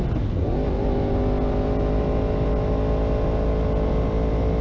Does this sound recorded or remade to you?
recorded